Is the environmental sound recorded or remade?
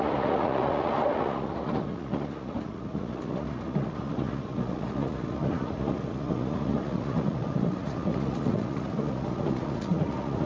remade